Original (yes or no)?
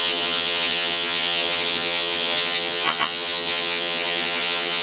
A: no